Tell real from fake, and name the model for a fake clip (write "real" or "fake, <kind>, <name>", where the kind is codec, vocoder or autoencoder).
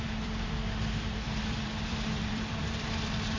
fake, vocoder, BigVGAN v2